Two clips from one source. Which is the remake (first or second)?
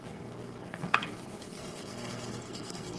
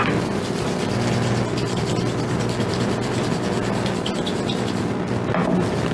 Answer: first